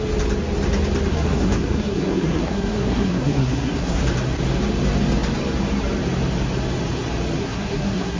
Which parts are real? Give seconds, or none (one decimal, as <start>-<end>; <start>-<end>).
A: 0.0-1.1; 4.0-7.4

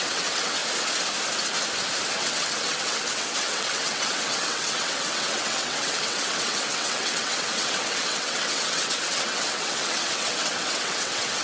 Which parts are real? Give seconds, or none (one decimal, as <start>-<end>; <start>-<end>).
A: 0.6-2.1

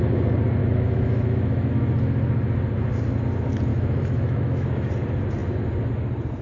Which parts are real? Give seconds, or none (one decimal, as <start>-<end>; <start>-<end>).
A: 0.0-0.6; 1.7-3.7; 4.9-6.4

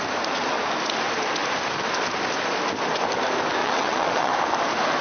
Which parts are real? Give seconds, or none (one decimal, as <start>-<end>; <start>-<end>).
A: 0.0-3.6; 4.3-5.0

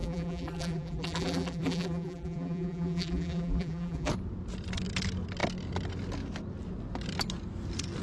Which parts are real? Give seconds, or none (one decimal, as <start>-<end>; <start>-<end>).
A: 4.1-8.0

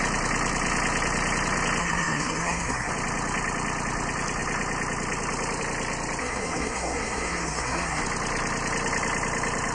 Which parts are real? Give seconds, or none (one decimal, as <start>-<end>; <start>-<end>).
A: 0.0-1.8; 2.9-6.2; 8.0-9.7

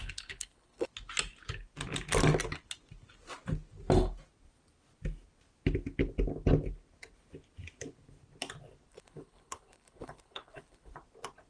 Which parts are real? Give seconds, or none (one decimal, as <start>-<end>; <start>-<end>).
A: 0.9-8.9; 10.9-11.5

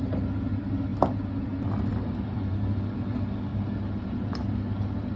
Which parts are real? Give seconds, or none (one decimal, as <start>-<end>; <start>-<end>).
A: 0.0-5.2